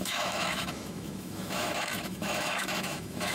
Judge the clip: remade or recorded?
remade